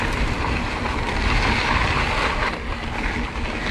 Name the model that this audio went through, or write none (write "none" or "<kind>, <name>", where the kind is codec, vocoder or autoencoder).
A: none